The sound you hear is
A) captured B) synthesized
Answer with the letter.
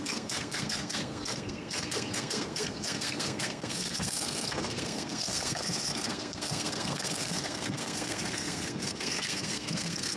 B